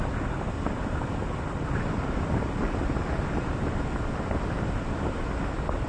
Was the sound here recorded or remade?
recorded